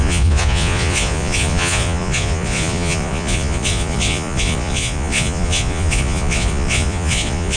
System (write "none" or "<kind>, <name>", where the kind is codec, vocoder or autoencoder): vocoder, Vocos